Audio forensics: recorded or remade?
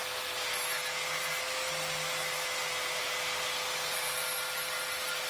recorded